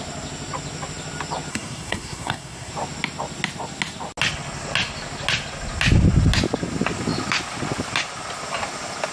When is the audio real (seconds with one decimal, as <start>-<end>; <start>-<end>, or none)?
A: 0.0-1.5; 2.7-9.1